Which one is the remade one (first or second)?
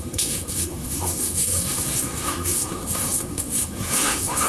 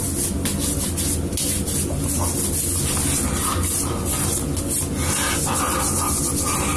first